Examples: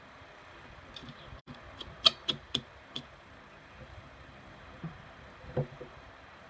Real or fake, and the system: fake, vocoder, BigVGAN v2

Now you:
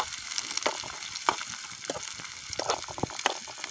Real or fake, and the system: real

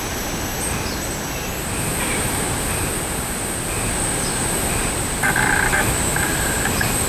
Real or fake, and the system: real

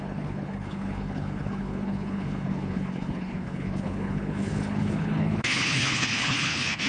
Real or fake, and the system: fake, codec, HILCodec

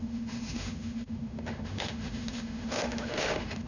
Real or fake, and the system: fake, autoencoder, DAC-VAE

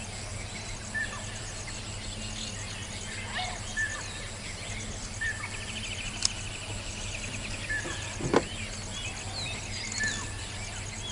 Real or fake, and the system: real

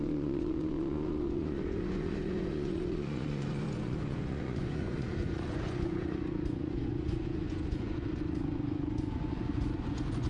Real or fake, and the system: fake, vocoder, Vocos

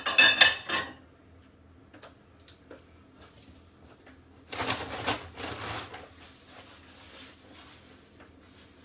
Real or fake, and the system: real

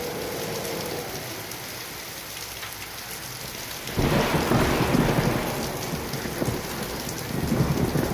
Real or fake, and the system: real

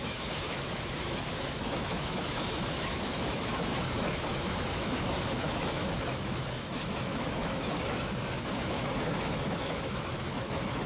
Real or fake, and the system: fake, autoencoder, DAC-VAE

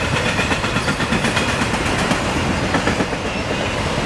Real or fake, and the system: fake, vocoder, BigVGAN v2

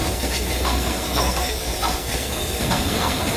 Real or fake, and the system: fake, codec, SNAC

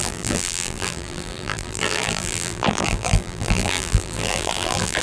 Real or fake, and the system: fake, vocoder, BigVGAN v2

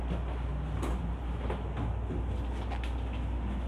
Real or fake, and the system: real